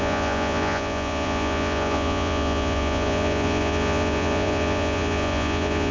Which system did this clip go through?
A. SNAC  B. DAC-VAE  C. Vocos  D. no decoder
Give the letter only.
C